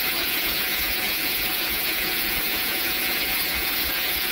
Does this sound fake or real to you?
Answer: fake